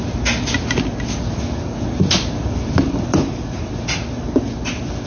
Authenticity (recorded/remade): recorded